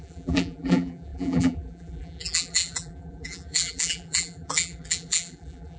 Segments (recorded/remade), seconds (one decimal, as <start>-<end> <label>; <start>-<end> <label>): 0.0-5.8 remade